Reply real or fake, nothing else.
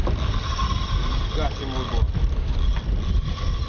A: real